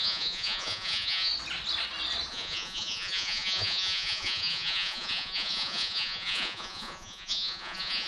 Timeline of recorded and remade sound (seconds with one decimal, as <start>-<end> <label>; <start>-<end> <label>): 0.0-1.3 remade; 1.3-2.3 recorded; 2.3-8.1 remade